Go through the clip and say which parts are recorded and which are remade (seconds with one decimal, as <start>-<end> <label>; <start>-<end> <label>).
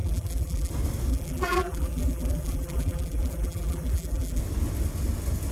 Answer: 0.0-0.7 remade; 0.7-1.1 recorded; 1.1-4.4 remade; 4.4-5.5 recorded